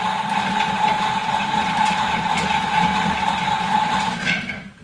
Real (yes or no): no